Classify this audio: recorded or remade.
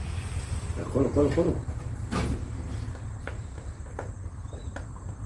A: remade